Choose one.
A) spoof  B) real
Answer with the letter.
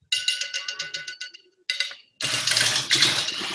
B